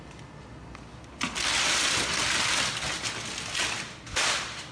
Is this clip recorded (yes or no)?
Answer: yes